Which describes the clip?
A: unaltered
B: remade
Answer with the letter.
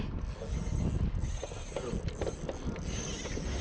A